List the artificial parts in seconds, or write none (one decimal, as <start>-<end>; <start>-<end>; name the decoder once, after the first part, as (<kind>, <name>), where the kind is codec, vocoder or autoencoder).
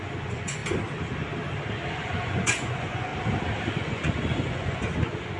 0.0-0.6 (vocoder, Vocos); 1.9-3.1; 3.7-5.4